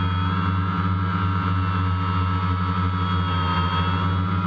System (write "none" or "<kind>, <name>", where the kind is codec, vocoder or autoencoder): none